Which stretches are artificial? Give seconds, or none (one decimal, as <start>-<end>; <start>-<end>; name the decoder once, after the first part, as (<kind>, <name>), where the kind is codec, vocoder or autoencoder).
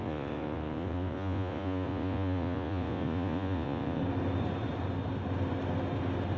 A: 0.0-4.0 (vocoder, Vocos)